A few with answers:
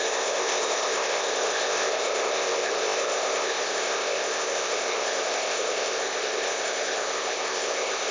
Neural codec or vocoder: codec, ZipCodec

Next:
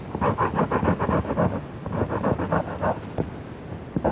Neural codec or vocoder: none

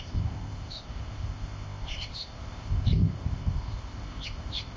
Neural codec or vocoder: codec, ZipCodec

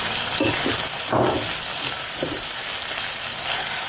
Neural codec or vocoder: none